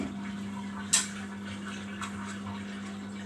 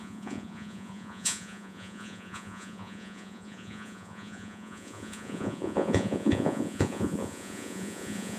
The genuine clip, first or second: first